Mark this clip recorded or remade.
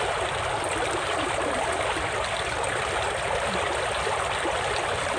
recorded